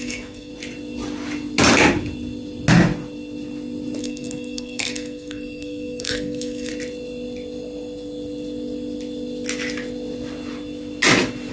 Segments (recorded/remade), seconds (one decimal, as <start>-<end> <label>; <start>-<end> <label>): 0.0-0.5 remade; 0.5-4.0 recorded; 4.0-6.7 remade; 6.7-11.5 recorded